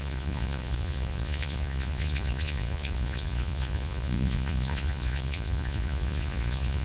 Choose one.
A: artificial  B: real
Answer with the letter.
A